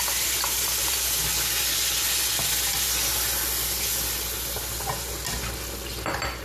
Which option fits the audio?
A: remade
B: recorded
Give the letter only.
B